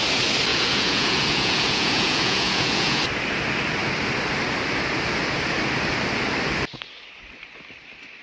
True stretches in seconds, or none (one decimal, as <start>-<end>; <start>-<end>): 0.0-0.5; 3.0-8.2

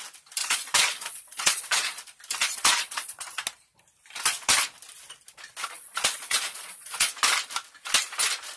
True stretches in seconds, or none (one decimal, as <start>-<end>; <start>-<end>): 0.0-0.4; 2.0-2.4; 3.2-5.6; 7.1-8.6